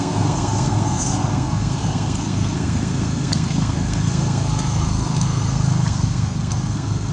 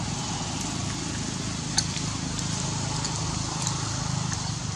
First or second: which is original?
second